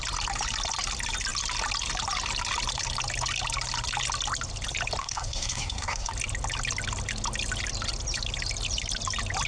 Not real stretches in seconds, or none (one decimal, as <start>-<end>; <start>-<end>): 5.0-6.1

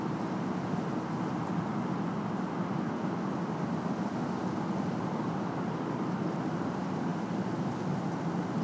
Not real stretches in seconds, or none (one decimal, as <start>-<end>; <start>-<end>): 0.0-1.7; 5.0-7.1

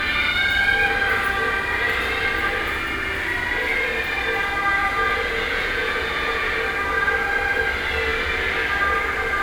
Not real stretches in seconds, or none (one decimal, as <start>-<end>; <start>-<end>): 4.8-6.5

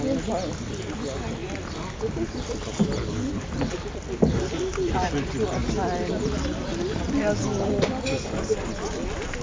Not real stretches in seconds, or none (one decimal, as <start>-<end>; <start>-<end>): 6.7-7.7

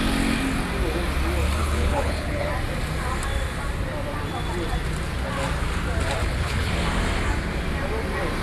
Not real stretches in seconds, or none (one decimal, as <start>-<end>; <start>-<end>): 1.6-2.5; 6.2-6.7

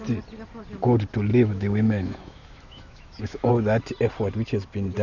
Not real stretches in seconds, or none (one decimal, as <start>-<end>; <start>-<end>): 1.3-3.5

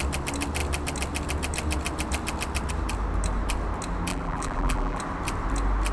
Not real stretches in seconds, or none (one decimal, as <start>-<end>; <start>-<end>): 4.1-5.0

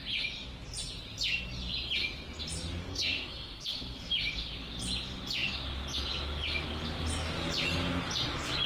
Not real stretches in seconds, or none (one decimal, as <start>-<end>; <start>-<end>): 2.8-4.1